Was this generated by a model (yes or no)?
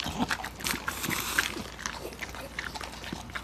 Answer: no